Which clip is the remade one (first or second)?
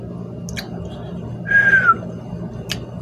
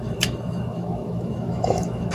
second